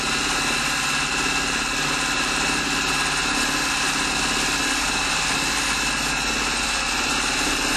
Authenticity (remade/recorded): recorded